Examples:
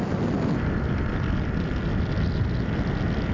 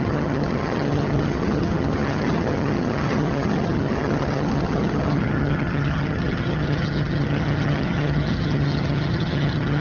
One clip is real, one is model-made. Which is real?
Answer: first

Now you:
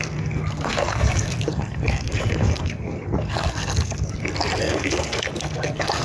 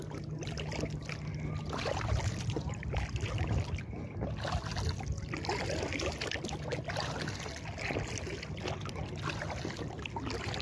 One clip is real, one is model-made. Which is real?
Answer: second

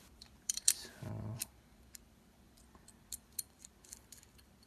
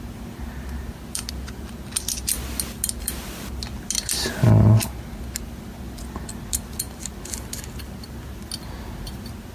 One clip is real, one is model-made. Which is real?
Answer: second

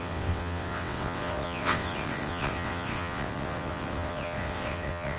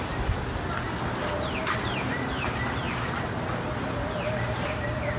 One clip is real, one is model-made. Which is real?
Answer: second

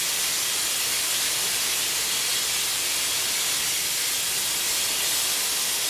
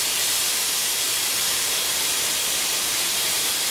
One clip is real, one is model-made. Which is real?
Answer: first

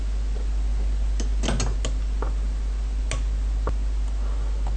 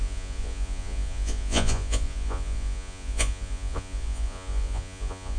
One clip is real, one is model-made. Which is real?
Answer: first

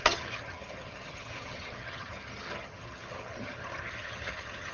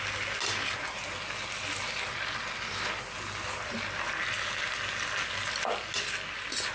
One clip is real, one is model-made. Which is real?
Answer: second